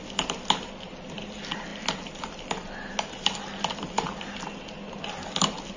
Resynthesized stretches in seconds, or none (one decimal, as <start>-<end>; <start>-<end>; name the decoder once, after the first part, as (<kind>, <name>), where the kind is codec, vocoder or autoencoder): none